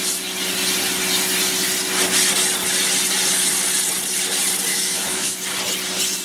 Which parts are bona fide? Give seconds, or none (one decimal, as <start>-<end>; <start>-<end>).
0.0-4.7; 5.4-6.2